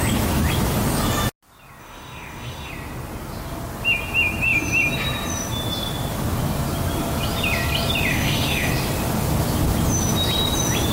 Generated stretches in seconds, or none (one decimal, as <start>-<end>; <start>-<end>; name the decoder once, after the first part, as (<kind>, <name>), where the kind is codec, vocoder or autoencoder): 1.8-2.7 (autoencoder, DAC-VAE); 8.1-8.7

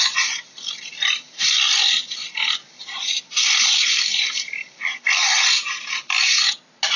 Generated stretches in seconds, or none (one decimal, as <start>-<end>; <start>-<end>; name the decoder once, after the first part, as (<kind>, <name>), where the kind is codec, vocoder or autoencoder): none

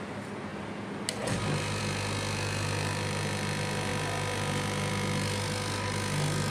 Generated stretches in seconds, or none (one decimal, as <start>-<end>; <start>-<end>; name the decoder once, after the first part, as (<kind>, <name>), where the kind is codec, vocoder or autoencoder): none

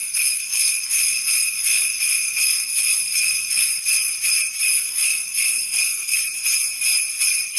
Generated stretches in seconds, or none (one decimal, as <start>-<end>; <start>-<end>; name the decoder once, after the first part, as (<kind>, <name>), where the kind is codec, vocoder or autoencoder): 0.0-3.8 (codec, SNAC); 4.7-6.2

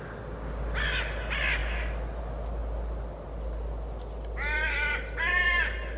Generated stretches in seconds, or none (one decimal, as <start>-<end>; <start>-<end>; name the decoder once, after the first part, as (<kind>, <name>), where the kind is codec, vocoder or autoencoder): none

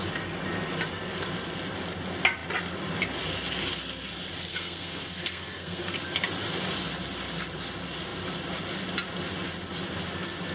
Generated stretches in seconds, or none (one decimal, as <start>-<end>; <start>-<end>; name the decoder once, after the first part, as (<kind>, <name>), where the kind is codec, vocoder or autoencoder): 4.5-5.9 (codec, SNAC)